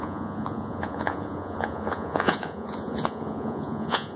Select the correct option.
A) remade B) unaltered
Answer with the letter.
A